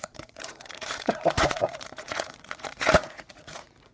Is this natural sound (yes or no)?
no